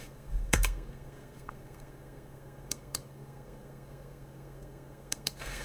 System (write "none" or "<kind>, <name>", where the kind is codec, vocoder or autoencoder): codec, SNAC